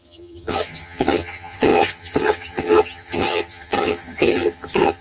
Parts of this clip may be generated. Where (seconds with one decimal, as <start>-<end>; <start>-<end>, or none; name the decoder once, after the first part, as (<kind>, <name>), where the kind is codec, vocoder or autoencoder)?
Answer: 0.0-5.0 (vocoder, HiFi-GAN)